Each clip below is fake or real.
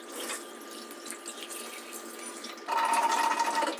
real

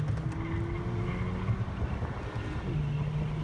real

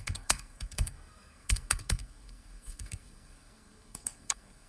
fake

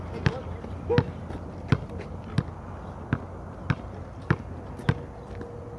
real